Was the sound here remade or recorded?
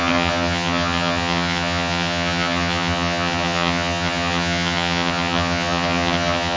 remade